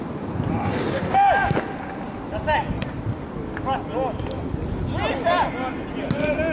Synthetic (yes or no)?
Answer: no